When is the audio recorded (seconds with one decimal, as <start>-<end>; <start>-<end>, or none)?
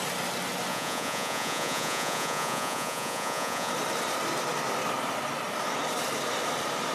0.0-0.7; 3.7-6.9